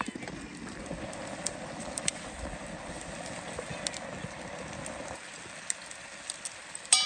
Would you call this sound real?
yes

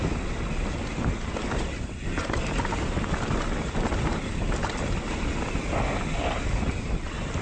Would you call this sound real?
yes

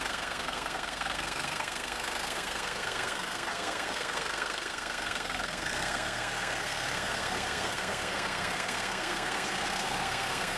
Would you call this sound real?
no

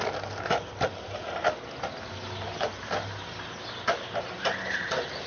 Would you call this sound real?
yes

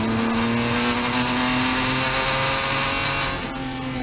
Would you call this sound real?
yes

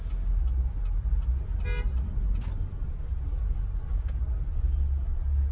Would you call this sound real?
yes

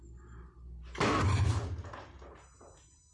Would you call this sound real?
yes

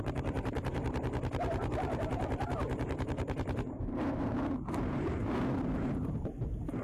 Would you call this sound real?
no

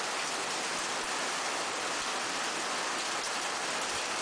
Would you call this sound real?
yes